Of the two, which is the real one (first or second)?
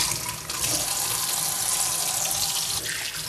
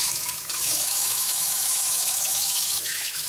first